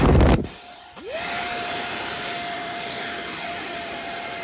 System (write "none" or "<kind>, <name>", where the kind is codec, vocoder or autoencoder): vocoder, BigVGAN v2